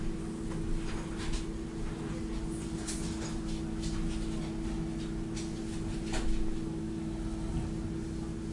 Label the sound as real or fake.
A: real